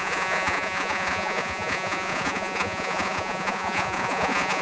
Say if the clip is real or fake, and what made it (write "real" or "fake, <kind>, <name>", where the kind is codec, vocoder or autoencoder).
fake, vocoder, Vocos